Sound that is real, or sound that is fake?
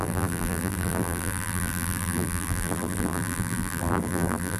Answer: fake